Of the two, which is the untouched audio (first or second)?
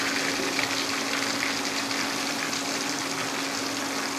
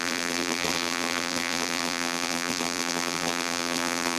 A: first